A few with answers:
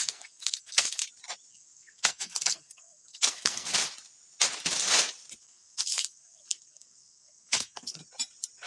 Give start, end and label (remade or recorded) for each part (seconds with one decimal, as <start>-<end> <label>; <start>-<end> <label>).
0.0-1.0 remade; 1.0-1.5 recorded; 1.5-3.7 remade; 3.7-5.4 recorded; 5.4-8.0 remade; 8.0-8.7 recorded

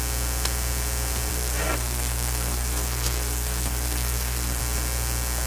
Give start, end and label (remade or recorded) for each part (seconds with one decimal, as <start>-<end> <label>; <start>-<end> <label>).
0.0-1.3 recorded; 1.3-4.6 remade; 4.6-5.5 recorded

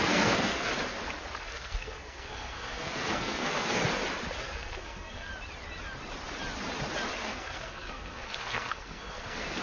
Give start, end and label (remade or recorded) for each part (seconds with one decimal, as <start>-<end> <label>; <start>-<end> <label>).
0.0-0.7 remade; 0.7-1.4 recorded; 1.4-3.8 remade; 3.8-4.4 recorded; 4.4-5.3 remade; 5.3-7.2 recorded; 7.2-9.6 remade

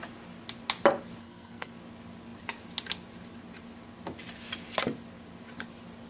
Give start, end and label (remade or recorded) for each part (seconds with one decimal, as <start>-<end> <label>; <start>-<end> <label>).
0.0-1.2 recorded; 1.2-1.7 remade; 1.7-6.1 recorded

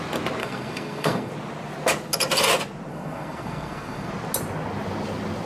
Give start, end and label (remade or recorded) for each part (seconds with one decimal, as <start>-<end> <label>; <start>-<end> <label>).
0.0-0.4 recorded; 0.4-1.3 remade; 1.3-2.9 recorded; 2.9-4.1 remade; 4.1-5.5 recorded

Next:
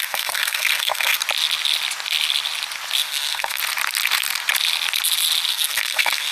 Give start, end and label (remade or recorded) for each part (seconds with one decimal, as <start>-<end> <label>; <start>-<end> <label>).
0.0-1.2 remade; 1.2-3.0 recorded; 3.0-3.6 remade; 3.6-5.5 recorded; 5.5-6.3 remade